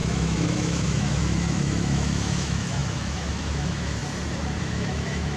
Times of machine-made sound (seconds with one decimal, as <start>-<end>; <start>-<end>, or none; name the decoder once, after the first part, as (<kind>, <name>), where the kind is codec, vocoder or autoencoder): 0.0-4.0 (autoencoder, DAC-VAE); 4.6-5.4